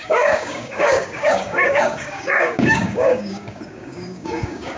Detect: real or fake fake